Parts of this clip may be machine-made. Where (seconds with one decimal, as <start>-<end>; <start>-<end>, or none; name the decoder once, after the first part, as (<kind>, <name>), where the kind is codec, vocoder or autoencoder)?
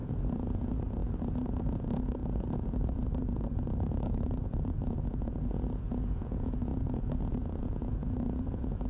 0.5-1.0 (vocoder, Vocos); 1.6-8.9